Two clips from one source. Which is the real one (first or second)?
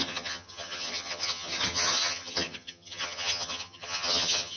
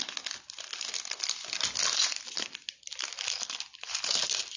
second